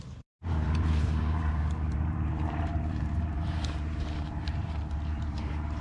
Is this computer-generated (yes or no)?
yes